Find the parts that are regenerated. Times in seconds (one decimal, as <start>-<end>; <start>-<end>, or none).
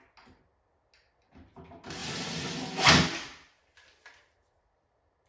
none